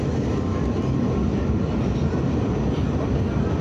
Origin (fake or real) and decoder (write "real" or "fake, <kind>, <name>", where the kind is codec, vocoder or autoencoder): real